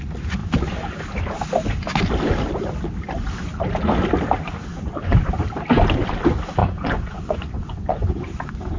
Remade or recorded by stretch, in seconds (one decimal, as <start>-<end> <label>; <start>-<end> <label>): 0.0-4.7 recorded; 4.7-5.3 remade; 5.3-6.6 recorded; 6.6-8.8 remade